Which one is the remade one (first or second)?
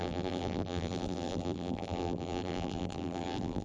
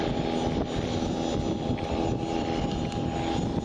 first